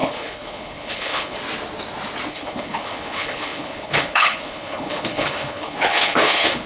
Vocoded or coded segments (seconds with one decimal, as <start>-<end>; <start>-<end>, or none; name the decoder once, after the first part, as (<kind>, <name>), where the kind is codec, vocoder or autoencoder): 0.0-1.4 (codec, HILCodec); 2.3-6.7